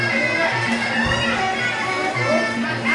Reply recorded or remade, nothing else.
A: recorded